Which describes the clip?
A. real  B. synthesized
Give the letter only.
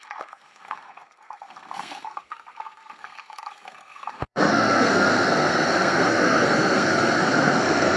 B